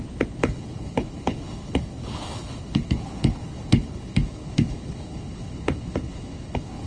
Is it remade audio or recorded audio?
remade